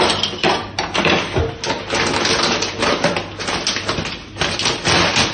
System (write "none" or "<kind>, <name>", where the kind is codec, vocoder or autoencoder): none